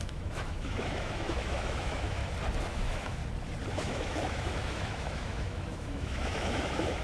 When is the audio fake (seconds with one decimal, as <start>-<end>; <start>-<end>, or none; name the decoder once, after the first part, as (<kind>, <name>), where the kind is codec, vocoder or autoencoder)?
0.0-2.2 (autoencoder, DAC-VAE); 2.7-3.2; 3.7-7.0